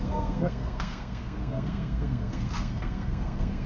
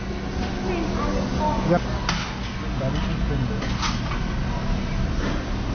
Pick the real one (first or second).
second